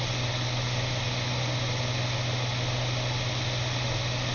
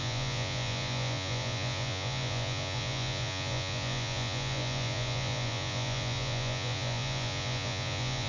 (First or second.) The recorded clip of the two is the first